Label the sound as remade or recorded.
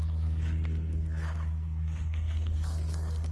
remade